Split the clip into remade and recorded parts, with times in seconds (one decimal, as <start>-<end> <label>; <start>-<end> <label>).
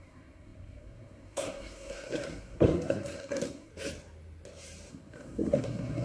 0.0-3.7 remade; 3.7-4.9 recorded; 4.9-6.0 remade